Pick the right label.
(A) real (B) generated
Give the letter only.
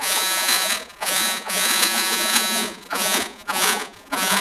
B